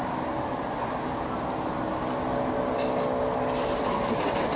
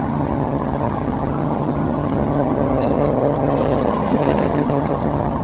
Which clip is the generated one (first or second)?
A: second